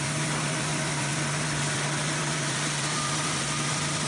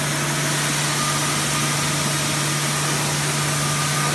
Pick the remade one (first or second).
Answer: first